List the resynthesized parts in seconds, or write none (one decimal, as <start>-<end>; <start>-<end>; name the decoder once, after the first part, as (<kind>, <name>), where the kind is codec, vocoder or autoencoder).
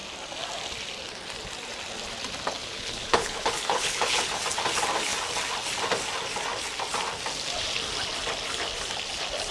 2.6-4.4 (codec, HILCodec)